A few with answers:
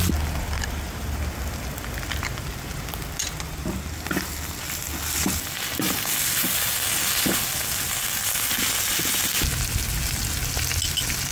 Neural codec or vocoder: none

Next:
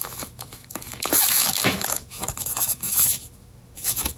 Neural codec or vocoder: autoencoder, DAC-VAE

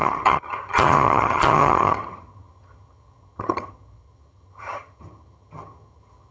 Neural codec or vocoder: vocoder, HiFi-GAN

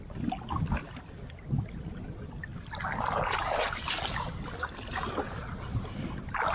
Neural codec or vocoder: none